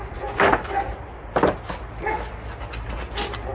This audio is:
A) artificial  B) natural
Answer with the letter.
B